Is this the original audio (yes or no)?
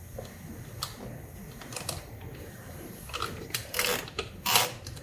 no